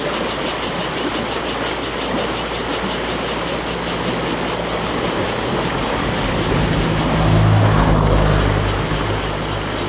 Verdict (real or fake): real